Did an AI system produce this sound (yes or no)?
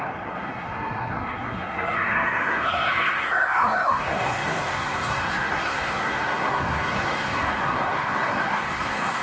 yes